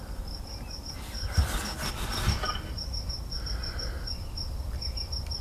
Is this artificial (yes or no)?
no